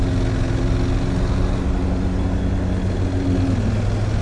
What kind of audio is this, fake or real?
real